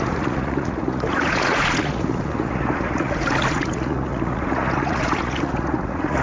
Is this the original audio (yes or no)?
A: no